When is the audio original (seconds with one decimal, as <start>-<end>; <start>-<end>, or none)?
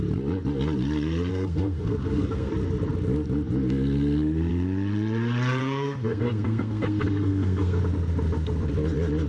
0.0-1.3; 2.5-5.6; 7.8-9.3